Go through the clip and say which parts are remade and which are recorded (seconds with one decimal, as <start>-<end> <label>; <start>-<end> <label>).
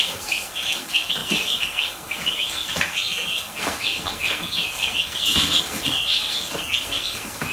0.0-7.5 remade